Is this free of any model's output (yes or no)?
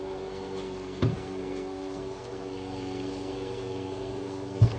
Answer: no